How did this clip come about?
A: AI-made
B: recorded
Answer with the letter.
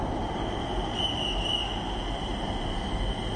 B